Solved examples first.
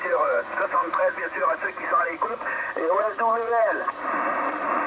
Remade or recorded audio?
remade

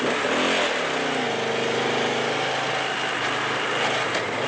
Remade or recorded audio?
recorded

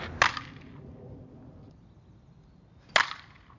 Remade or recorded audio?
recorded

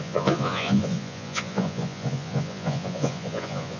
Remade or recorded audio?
remade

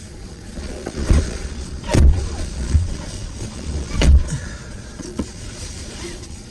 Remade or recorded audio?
remade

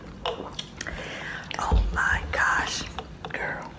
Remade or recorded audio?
recorded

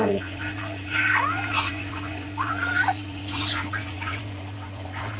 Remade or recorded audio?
remade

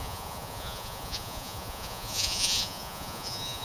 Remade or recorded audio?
remade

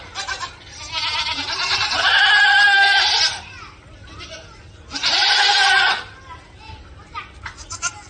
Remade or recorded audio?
recorded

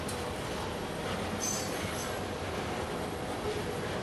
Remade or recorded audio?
recorded